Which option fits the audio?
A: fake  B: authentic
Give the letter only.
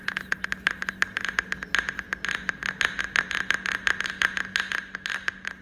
B